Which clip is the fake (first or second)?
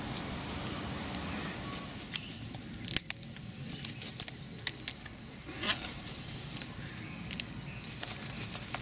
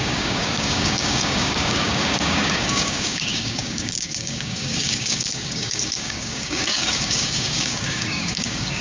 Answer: second